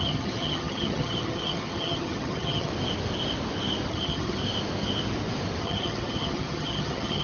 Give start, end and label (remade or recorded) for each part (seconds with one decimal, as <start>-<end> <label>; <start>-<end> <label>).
0.0-2.7 remade; 2.7-3.9 recorded; 3.9-4.4 remade; 4.4-5.6 recorded; 5.6-7.2 remade